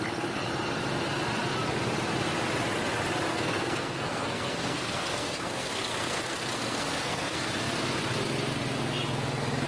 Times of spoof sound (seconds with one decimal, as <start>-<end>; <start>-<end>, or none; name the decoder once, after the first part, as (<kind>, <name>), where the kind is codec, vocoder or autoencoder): 3.3-7.5 (codec, SNAC)